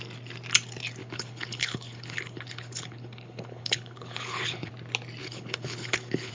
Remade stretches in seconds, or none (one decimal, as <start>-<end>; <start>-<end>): 1.0-4.7; 5.2-6.3